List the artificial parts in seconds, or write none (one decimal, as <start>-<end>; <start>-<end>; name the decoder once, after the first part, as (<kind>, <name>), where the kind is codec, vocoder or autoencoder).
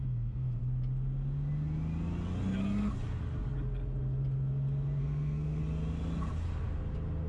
0.0-0.6 (codec, SNAC); 5.0-5.6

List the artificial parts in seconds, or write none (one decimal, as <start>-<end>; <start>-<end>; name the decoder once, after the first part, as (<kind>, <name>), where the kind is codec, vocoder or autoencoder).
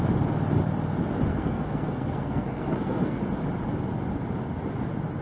1.3-3.2 (codec, SNAC)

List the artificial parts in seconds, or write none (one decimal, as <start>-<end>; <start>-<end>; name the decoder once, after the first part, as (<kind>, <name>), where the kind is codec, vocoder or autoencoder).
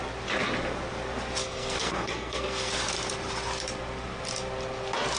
1.4-2.7 (codec, SNAC)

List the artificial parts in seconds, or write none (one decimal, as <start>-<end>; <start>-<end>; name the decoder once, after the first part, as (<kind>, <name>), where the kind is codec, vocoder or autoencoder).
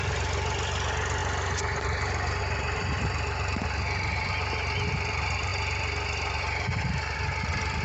none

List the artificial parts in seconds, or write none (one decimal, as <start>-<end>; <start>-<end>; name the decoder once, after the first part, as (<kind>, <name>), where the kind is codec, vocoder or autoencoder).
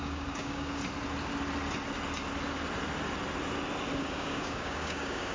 0.0-0.8 (codec, DAC); 4.0-5.3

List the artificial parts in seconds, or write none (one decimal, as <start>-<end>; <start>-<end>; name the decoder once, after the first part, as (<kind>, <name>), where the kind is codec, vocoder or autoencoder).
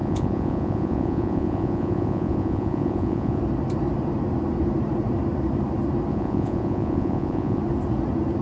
0.0-3.4 (vocoder, Vocos); 6.1-7.6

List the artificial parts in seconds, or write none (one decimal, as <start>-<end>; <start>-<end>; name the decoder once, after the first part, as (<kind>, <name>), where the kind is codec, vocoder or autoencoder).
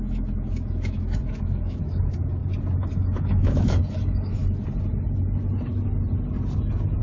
0.0-2.4 (autoencoder, DAC-VAE); 2.9-4.4